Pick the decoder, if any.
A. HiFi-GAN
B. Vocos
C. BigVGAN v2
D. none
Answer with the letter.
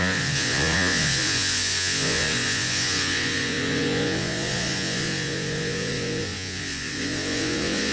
B